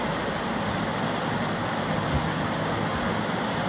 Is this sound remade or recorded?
recorded